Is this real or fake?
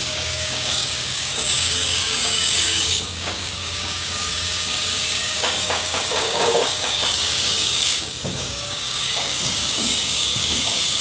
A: fake